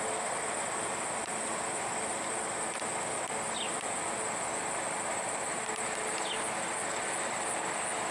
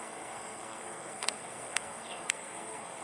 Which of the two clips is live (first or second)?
first